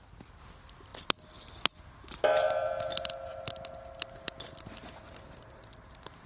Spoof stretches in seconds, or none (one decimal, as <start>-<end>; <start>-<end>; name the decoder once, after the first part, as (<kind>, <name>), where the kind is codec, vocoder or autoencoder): none